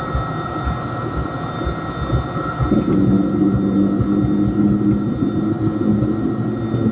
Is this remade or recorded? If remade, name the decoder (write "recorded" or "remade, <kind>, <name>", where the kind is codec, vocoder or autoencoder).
recorded